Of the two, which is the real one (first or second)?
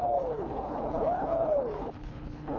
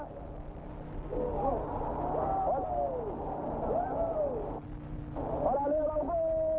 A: second